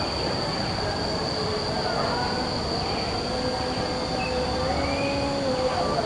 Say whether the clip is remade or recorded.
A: recorded